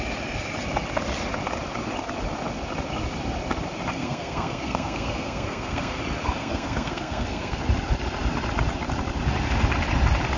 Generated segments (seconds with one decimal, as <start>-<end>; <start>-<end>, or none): 3.9-6.0; 6.4-7.6